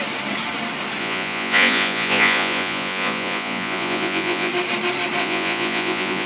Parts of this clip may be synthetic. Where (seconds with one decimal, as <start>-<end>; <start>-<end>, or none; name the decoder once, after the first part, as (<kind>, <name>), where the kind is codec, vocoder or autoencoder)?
1.0-4.5 (vocoder, Vocos); 5.2-6.3